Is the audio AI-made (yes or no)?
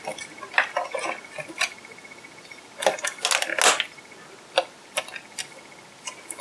no